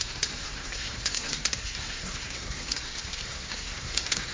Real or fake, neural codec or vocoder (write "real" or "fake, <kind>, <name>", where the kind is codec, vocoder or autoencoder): fake, codec, SNAC